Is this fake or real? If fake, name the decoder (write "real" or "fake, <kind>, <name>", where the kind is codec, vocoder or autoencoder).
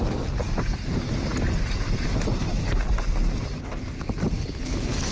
real